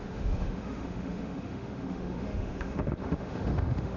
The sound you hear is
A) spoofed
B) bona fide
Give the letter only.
A